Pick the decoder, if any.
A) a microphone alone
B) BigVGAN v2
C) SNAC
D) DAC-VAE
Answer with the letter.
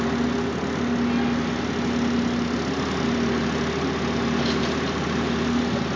A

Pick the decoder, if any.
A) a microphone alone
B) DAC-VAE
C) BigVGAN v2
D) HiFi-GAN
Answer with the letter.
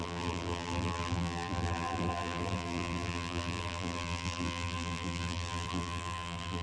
C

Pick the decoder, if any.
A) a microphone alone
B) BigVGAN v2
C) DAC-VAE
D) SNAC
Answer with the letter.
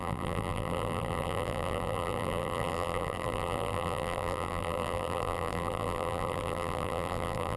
B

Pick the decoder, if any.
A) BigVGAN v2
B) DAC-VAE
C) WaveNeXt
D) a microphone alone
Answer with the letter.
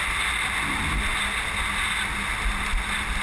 D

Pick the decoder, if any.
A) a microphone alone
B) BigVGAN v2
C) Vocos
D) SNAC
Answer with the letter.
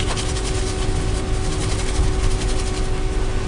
A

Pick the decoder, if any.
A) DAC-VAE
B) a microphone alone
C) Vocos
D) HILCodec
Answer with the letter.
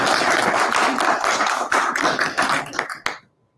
B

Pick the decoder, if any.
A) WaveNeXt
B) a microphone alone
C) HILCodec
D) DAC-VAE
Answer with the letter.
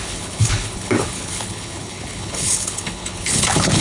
C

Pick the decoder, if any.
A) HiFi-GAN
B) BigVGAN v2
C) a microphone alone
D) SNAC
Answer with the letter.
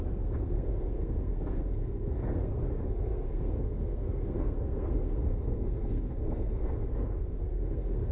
D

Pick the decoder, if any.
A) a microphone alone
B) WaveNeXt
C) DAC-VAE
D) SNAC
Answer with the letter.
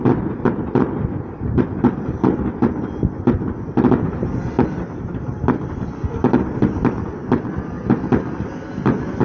A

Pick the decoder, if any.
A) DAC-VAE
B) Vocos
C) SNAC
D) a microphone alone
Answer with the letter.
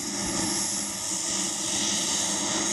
D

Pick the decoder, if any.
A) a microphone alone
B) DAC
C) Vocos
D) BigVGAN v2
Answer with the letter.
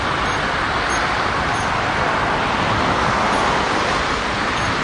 D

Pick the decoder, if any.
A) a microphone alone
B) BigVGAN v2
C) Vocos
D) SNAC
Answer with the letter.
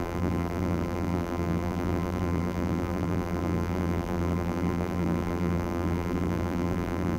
B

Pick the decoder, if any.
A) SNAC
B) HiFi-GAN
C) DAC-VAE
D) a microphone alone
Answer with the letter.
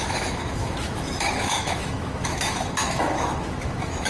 C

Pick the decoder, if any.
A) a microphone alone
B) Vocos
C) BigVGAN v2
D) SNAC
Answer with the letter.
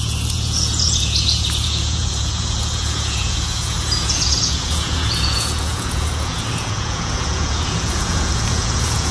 B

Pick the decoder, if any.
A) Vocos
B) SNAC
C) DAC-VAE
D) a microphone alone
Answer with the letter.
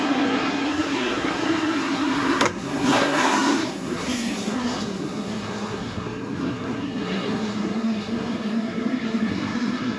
B